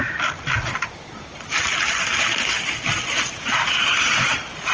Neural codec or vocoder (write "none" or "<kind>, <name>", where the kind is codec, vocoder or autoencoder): none